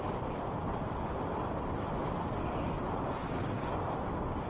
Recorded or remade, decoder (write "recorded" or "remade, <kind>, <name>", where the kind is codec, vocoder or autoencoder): recorded